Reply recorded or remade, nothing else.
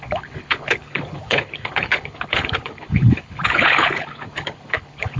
remade